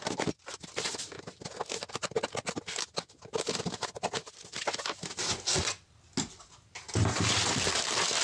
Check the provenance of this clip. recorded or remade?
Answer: recorded